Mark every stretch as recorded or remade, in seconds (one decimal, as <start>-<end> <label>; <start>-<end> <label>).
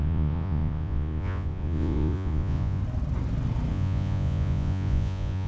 0.0-2.8 remade; 2.8-3.7 recorded; 3.7-5.5 remade